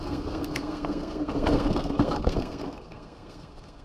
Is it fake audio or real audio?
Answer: fake